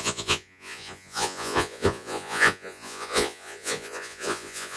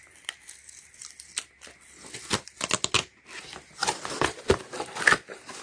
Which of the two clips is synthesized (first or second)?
first